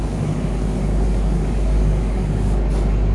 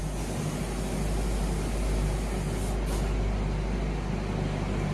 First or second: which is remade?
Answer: first